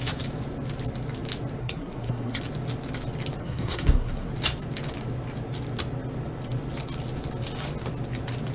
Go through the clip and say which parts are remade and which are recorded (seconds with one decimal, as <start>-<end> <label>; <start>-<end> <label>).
0.0-1.6 recorded; 1.6-2.4 remade; 2.4-3.4 recorded; 3.4-4.3 remade; 4.3-8.5 recorded